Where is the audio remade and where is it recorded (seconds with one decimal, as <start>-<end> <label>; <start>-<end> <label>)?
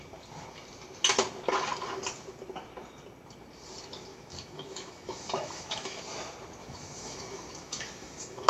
0.0-4.1 recorded; 4.1-6.0 remade; 6.0-6.6 recorded; 6.6-8.5 remade